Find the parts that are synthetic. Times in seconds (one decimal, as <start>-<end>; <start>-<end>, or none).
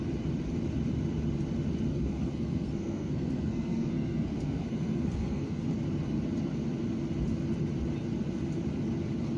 1.9-5.6